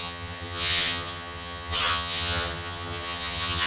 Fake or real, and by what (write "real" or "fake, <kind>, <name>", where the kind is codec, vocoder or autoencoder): fake, vocoder, HiFi-GAN